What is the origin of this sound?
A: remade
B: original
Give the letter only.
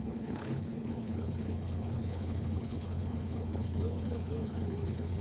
A